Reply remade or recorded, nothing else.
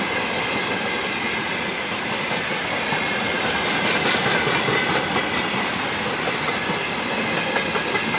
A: recorded